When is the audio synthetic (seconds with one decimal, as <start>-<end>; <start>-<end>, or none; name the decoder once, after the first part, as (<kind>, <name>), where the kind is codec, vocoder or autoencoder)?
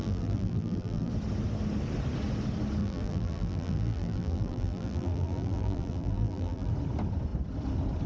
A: 0.0-1.1 (vocoder, BigVGAN v2); 2.8-6.7